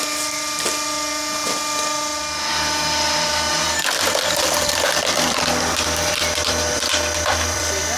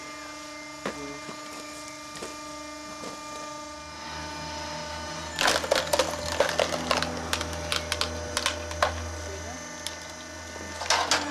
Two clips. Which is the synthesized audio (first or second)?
first